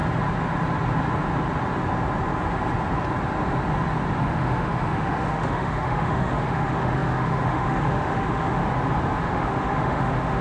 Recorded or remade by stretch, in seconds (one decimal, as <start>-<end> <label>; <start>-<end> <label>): 0.0-4.2 recorded; 4.2-8.6 remade; 8.6-9.2 recorded; 9.2-10.4 remade

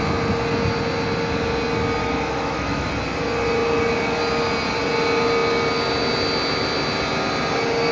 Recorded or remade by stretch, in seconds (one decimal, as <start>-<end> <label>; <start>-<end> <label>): 0.0-2.0 recorded; 2.0-2.9 remade; 2.9-7.9 recorded

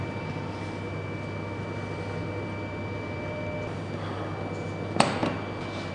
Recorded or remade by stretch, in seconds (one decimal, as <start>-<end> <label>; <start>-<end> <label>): 0.0-5.9 recorded

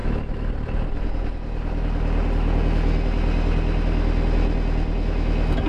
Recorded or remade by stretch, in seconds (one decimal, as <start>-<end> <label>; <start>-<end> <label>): 0.0-0.5 remade; 0.5-5.7 recorded

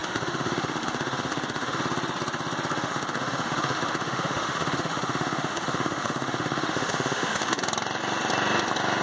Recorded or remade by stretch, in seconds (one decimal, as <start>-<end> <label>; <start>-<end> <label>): 0.0-1.8 remade; 1.8-2.7 recorded; 2.7-7.6 remade; 7.6-9.0 recorded

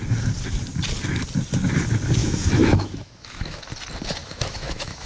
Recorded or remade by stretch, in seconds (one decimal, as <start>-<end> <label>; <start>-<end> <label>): 0.0-2.2 recorded; 2.2-3.6 remade; 3.6-4.2 recorded; 4.2-5.1 remade

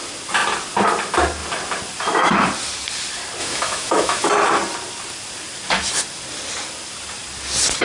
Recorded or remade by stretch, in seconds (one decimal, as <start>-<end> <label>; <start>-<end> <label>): 0.0-3.4 recorded; 3.4-4.3 remade; 4.3-7.8 recorded